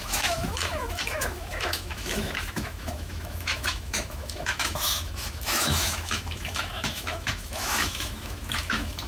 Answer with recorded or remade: remade